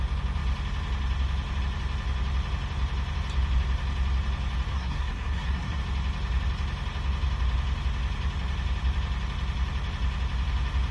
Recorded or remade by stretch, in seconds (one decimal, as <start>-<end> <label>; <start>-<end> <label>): 0.0-4.7 recorded; 4.7-5.8 remade; 5.8-10.9 recorded